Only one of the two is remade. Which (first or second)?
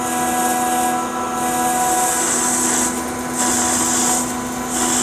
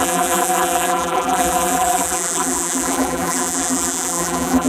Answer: second